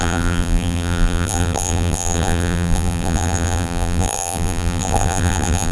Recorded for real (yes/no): no